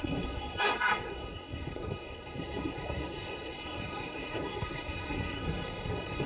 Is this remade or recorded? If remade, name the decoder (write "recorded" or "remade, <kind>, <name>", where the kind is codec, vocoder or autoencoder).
remade, codec, SNAC